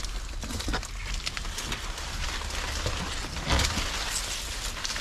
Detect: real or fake real